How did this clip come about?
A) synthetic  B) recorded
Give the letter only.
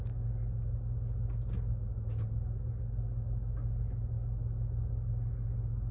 B